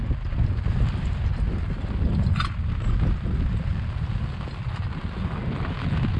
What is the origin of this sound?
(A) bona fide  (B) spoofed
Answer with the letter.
A